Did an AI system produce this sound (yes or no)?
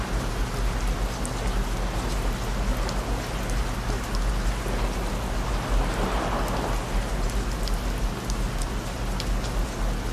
no